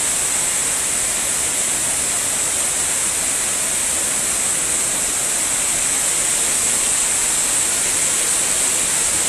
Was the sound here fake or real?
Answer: real